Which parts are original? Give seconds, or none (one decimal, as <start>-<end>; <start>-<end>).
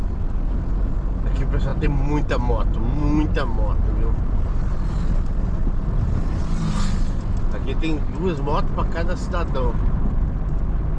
0.0-11.0